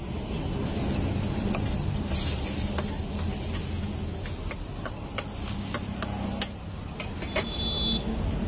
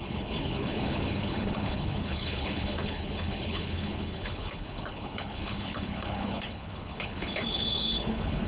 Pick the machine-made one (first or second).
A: second